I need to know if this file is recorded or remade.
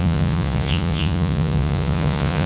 remade